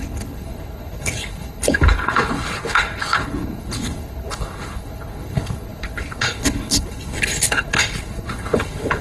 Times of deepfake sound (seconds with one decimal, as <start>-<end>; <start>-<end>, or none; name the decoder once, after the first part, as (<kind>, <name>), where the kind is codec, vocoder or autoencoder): 0.0-9.0 (codec, HILCodec)